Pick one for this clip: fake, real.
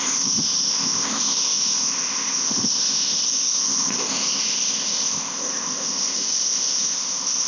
fake